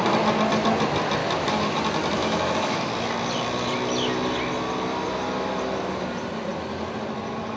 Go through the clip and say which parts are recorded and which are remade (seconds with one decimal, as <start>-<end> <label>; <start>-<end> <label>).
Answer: 0.0-1.2 recorded; 1.2-1.8 remade; 1.8-2.2 recorded; 2.2-2.9 remade; 2.9-7.6 recorded